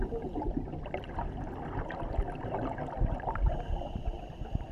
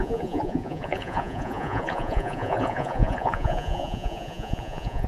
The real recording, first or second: first